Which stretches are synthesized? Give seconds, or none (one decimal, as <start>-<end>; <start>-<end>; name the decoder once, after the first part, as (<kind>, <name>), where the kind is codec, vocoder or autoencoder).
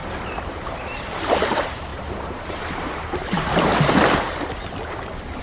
0.0-3.7 (vocoder, BigVGAN v2)